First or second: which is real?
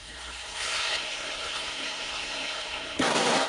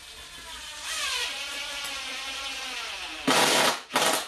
second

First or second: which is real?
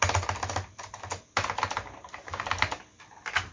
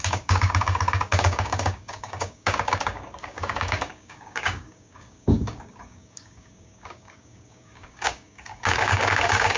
first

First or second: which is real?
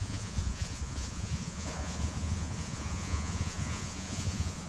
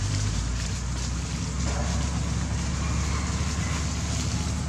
second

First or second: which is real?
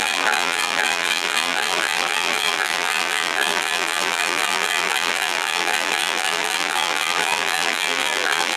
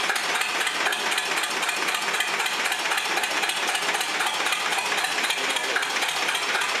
second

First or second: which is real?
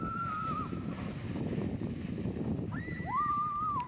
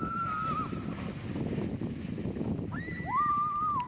second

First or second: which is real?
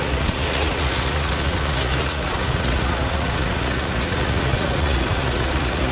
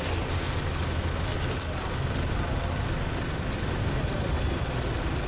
second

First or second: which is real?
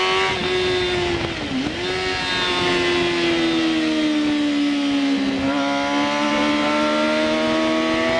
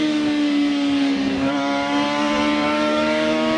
first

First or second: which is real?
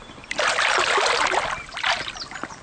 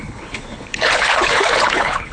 first